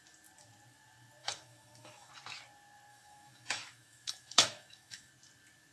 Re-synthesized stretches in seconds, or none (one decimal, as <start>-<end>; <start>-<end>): 1.2-2.1; 2.9-5.1